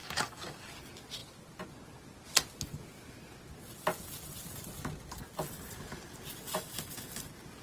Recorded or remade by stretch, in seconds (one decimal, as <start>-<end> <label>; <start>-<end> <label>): 0.0-0.7 remade; 0.7-7.6 recorded